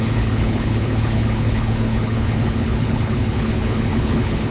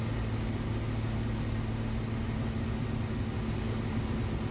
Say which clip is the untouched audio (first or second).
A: second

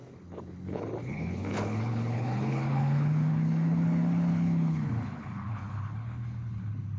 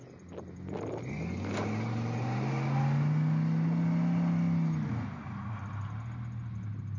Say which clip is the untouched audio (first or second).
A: second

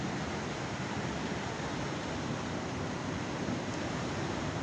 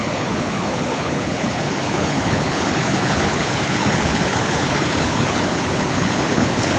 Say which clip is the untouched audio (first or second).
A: first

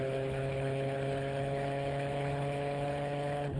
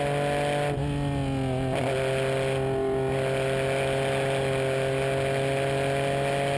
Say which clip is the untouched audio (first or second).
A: second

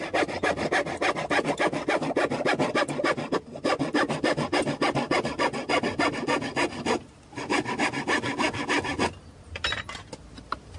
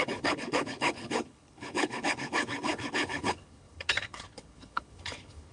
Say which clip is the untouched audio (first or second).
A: first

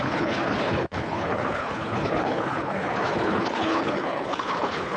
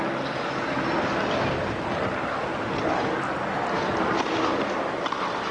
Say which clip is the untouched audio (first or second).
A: second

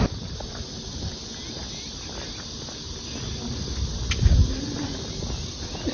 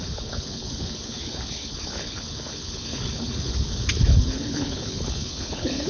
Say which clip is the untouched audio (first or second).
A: first